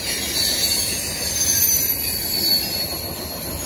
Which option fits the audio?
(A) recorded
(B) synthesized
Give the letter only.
A